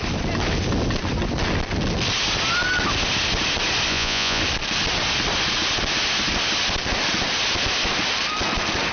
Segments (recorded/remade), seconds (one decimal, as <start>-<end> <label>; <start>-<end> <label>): 0.0-3.9 recorded; 3.9-4.4 remade; 4.4-8.9 recorded